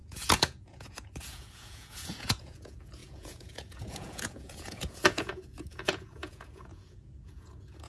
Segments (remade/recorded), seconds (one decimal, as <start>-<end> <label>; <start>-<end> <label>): 0.0-7.9 remade